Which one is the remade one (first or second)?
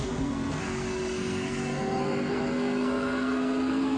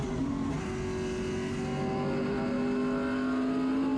first